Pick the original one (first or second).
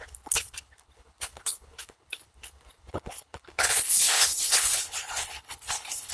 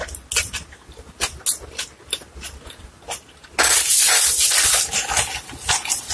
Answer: second